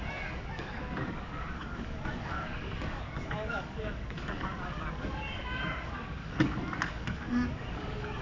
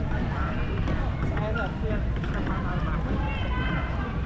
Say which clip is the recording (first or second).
second